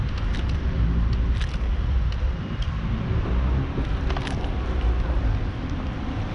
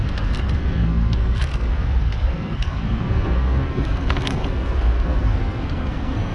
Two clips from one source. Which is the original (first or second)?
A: first